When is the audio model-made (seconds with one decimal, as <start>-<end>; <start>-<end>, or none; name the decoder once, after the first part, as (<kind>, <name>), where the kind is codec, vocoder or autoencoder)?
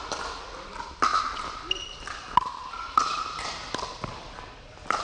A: none